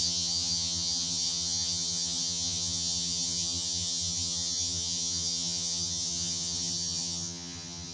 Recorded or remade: remade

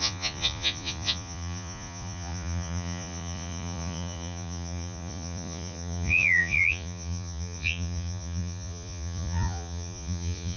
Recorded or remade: remade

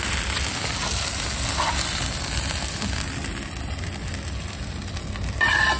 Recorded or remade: recorded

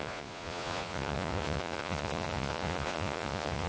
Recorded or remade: remade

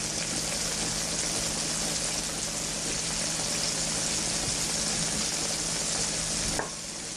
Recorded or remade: recorded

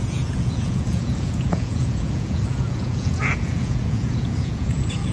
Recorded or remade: remade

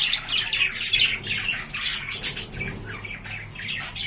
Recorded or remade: recorded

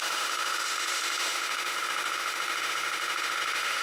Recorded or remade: remade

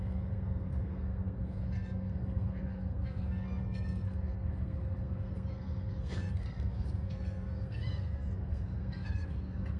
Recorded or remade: remade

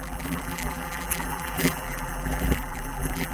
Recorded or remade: remade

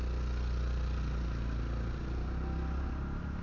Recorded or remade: recorded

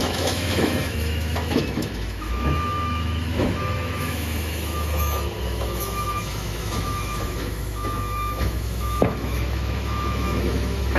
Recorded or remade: remade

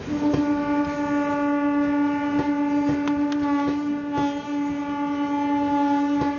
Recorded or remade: recorded